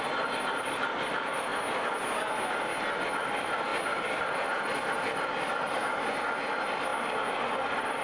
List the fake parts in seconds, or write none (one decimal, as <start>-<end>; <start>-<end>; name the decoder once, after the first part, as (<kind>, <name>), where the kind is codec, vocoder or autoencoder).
0.0-1.5 (vocoder, BigVGAN v2); 3.0-3.7; 4.2-5.8; 6.5-6.9; 7.5-8.0